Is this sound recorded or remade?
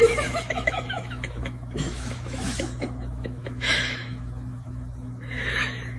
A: remade